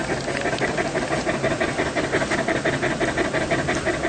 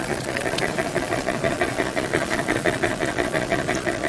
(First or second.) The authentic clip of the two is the first